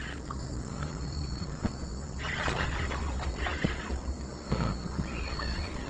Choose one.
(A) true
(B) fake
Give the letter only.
B